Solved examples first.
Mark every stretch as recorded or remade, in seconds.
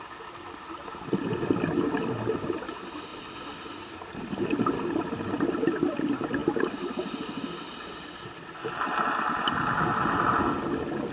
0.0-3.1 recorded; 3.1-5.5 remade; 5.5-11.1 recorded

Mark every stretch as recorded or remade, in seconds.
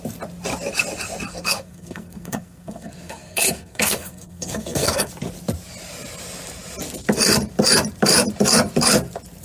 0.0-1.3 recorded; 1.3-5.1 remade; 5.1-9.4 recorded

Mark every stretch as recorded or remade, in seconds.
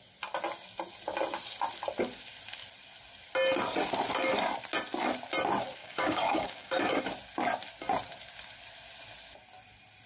0.0-5.8 recorded; 5.8-7.0 remade; 7.0-10.1 recorded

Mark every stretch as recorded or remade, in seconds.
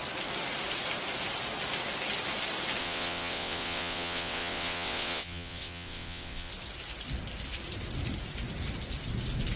0.0-2.8 recorded; 2.8-6.5 remade; 6.5-9.6 recorded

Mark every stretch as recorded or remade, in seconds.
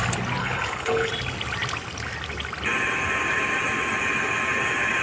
0.0-0.4 recorded; 0.4-1.1 remade; 1.1-5.0 recorded